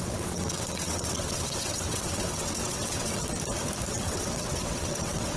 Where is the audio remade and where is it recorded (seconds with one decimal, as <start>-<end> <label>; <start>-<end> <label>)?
0.0-3.2 remade; 3.2-3.9 recorded; 3.9-5.4 remade